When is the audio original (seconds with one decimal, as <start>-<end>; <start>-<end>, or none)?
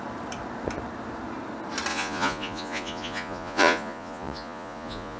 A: 0.0-1.9